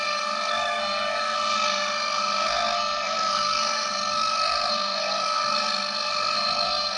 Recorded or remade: remade